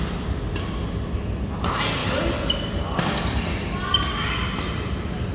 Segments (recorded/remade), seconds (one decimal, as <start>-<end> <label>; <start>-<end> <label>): 0.0-5.3 recorded